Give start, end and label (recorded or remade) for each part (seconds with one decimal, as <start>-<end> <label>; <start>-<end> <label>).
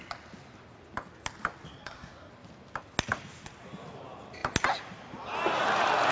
0.0-1.7 recorded; 1.7-2.3 remade; 2.3-6.1 recorded